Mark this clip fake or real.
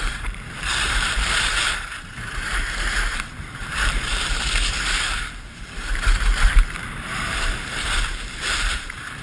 fake